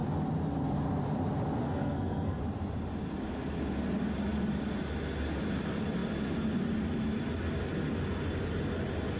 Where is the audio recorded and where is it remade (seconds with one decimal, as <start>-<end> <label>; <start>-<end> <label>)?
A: 0.0-1.6 recorded; 1.6-2.4 remade; 2.4-9.2 recorded